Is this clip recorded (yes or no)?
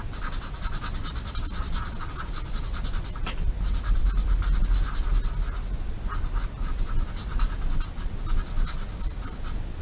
yes